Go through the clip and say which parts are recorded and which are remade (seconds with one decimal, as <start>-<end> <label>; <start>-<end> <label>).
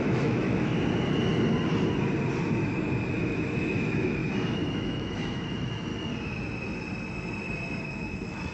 0.0-0.7 remade; 0.7-3.1 recorded; 3.1-4.2 remade; 4.2-4.7 recorded; 4.7-5.9 remade; 5.9-7.8 recorded; 7.8-8.5 remade